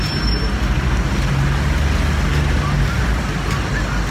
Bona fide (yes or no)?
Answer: yes